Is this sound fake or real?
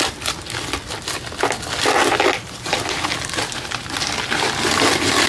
real